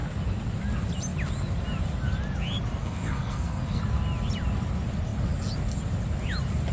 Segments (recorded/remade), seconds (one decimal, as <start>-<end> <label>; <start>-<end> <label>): 0.0-2.8 recorded; 2.8-3.8 remade; 3.8-6.7 recorded